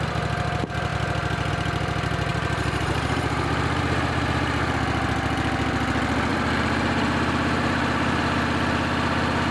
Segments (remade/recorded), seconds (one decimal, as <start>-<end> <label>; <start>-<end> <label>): 0.0-2.3 recorded; 2.3-4.8 remade; 4.8-6.3 recorded; 6.3-8.2 remade; 8.2-9.5 recorded